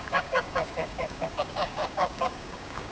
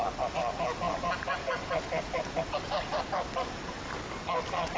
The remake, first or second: first